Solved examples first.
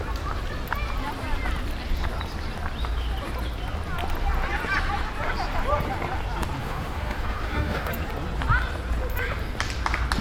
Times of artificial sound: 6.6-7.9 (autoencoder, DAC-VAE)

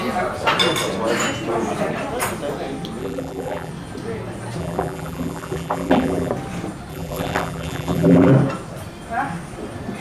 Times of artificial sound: 3.0-3.7 (vocoder, BigVGAN v2); 4.6-6.3; 6.9-8.3

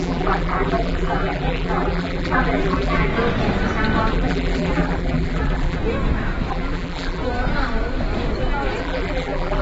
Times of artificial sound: 0.0-3.1 (vocoder, BigVGAN v2); 4.1-5.8; 6.5-7.2; 8.8-9.6

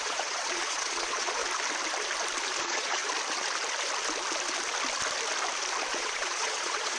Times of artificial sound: 0.0-1.4 (vocoder, Vocos); 2.6-3.0; 5.9-7.0